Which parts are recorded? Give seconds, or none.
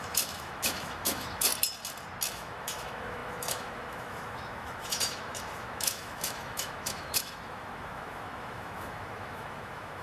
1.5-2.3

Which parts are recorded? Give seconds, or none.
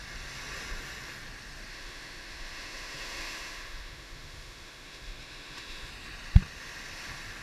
0.0-1.7; 5.9-7.4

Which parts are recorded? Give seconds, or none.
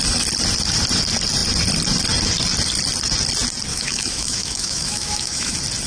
0.0-3.7; 5.5-5.9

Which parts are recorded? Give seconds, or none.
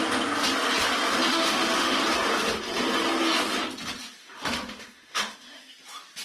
0.0-1.3; 2.0-4.2; 5.7-6.2